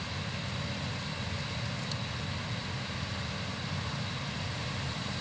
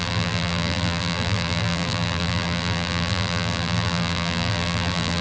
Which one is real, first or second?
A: first